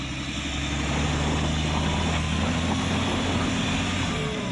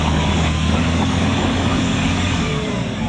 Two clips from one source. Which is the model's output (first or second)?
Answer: second